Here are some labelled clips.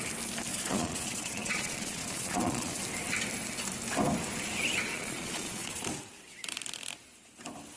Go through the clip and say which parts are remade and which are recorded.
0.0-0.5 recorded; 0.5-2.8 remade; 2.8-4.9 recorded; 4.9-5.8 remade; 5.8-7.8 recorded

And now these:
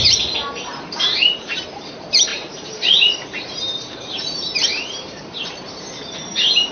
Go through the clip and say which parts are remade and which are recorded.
0.0-6.7 remade

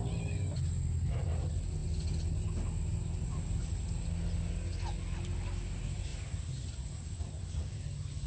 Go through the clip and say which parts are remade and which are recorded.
0.0-8.3 recorded

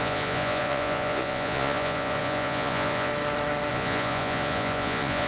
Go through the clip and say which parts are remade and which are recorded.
0.0-3.1 remade; 3.1-3.7 recorded; 3.7-5.3 remade